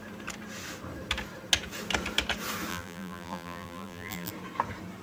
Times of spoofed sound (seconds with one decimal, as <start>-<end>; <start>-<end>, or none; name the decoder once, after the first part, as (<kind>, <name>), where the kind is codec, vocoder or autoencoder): 2.7-4.3 (vocoder, BigVGAN v2)